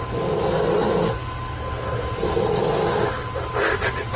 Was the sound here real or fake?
real